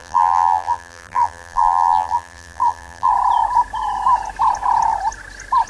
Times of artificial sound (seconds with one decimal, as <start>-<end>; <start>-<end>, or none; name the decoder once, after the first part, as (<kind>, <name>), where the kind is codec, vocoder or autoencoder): 0.0-3.1 (vocoder, BigVGAN v2)